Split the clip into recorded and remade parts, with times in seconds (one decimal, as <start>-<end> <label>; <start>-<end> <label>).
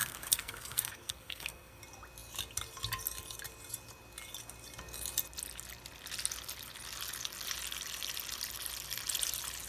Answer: 0.0-1.8 remade; 1.8-9.7 recorded